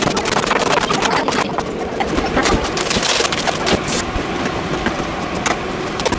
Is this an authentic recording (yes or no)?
no